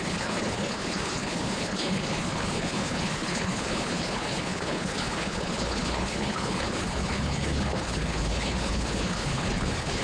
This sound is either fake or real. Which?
fake